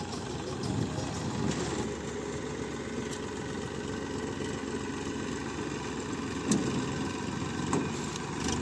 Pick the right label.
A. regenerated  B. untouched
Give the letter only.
B